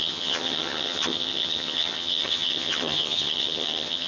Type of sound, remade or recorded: remade